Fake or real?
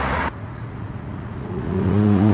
fake